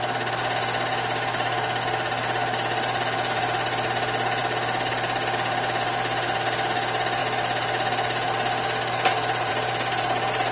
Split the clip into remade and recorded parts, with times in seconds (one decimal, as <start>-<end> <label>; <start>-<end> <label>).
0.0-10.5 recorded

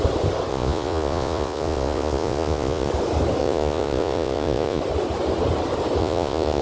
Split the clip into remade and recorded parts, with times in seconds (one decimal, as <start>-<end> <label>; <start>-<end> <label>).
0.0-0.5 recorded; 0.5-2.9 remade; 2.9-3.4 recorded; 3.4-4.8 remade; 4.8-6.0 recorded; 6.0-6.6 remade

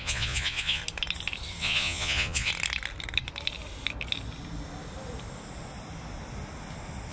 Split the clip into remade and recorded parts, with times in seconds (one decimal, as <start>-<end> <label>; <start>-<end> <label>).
0.0-0.8 remade; 0.8-1.6 recorded; 1.6-2.5 remade; 2.5-7.1 recorded

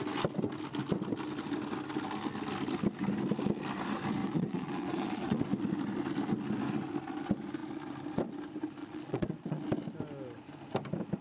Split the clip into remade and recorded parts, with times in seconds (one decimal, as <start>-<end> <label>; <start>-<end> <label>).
0.0-4.2 recorded; 4.2-5.4 remade; 5.4-8.8 recorded; 8.8-9.6 remade; 9.6-11.2 recorded